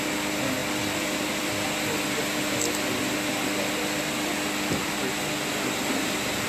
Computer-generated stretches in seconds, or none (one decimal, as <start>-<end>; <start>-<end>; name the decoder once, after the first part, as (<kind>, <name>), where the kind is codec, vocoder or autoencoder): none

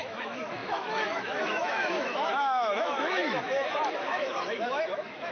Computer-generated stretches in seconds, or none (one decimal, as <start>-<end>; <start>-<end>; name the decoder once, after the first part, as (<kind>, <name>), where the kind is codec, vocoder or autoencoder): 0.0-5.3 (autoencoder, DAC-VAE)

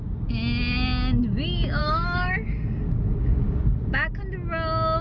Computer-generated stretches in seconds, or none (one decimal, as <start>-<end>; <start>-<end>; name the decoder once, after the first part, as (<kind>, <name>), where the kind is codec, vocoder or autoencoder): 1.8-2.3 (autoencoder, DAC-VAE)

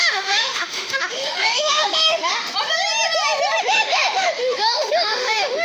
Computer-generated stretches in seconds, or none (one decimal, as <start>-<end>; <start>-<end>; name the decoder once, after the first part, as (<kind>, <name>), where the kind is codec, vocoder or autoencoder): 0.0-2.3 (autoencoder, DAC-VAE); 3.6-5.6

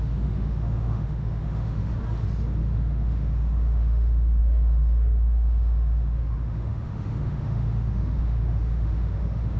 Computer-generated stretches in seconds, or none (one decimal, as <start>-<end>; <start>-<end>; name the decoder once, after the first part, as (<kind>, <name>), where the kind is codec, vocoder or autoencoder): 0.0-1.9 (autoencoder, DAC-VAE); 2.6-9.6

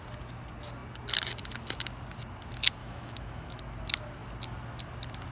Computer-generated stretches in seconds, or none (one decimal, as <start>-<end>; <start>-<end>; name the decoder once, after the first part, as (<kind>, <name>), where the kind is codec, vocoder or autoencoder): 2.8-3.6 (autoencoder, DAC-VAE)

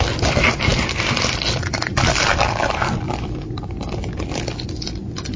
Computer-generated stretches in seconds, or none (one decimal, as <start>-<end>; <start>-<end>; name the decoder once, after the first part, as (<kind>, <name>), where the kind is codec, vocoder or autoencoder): none